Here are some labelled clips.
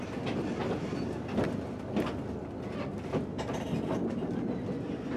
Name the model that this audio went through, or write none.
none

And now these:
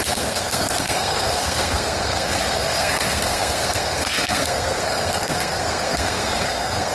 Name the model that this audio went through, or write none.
codec, SNAC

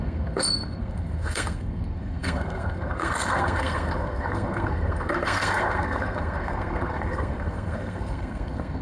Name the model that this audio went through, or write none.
codec, SNAC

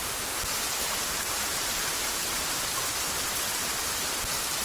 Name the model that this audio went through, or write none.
none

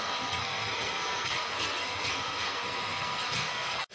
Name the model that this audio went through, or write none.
codec, SNAC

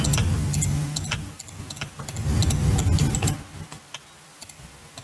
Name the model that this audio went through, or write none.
none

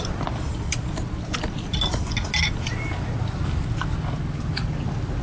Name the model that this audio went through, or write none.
none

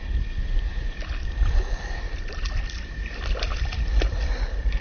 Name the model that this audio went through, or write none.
none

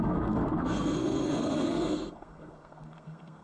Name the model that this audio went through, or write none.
codec, SNAC